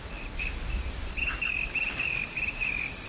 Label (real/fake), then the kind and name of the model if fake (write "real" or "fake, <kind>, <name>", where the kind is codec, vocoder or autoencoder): real